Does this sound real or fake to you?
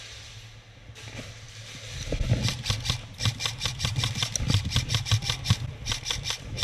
real